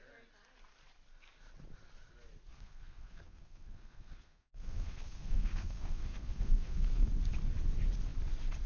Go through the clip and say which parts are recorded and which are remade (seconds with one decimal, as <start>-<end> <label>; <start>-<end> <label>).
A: 0.0-2.5 recorded; 2.5-7.1 remade; 7.1-8.7 recorded